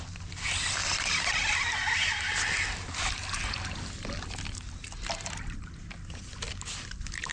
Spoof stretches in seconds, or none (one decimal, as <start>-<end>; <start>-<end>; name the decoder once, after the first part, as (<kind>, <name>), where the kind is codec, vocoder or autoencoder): none